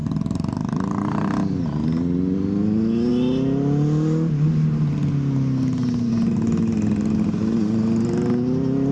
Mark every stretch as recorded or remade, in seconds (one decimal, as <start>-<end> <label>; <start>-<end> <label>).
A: 0.0-8.9 recorded